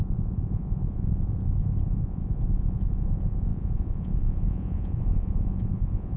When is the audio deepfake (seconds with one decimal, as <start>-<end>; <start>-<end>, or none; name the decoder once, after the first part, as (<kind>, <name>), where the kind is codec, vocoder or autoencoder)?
0.0-6.2 (vocoder, Vocos)